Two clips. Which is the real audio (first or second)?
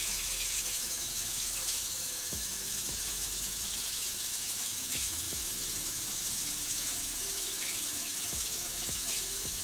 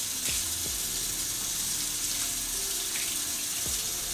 second